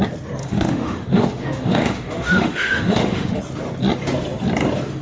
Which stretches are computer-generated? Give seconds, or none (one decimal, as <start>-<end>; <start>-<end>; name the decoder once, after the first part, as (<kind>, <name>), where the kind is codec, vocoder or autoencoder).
0.4-3.4 (autoencoder, DAC-VAE)